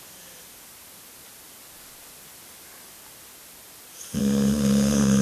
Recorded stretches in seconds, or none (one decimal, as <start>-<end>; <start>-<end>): 0.0-4.2